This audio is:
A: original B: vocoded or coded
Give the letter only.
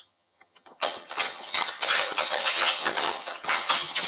B